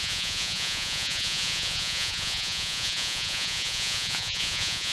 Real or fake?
fake